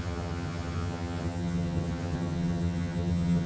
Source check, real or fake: fake